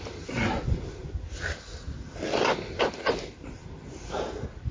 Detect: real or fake real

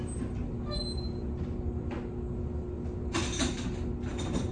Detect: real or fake real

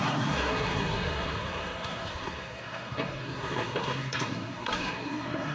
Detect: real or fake fake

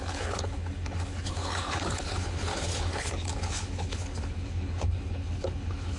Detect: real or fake fake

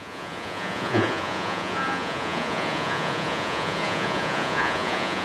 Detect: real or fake fake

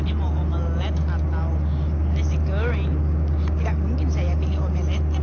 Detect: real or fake real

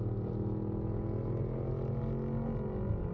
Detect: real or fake real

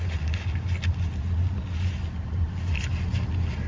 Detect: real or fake real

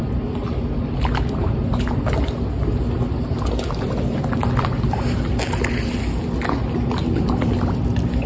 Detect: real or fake real